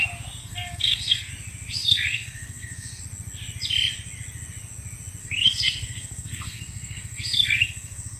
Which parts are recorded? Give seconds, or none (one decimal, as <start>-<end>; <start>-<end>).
0.0-0.4; 1.3-1.8; 3.0-5.2